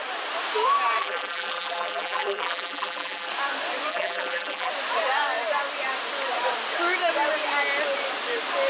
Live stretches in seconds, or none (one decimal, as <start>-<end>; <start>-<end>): 0.0-1.0; 3.3-3.9; 4.7-8.7